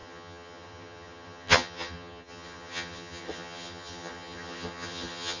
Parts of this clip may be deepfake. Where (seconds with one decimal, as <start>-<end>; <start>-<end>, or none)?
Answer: 0.0-5.4